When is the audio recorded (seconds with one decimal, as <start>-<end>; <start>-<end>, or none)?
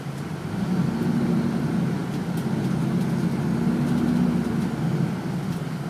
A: 0.0-5.9